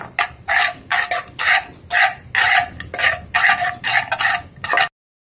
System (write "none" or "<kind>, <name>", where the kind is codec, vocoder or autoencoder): none